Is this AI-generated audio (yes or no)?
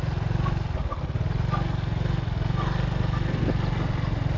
no